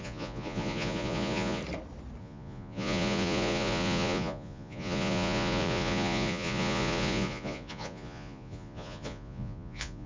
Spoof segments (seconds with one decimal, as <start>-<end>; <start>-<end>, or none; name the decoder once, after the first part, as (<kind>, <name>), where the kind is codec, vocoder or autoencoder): 0.0-1.6 (vocoder, Vocos); 2.2-10.1